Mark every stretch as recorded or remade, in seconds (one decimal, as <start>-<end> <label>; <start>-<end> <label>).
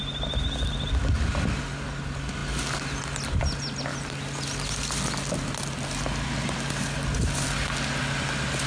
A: 0.0-8.7 recorded